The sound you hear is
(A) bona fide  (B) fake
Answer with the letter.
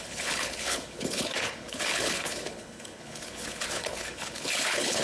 B